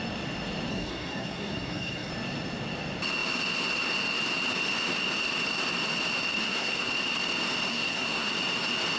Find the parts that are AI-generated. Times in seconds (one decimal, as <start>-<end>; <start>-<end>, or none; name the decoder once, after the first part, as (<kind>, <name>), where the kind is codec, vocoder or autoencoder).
0.7-2.1 (codec, SNAC); 6.4-6.9; 7.7-8.3